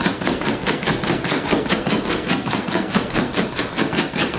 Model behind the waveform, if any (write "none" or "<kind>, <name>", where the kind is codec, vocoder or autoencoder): codec, SNAC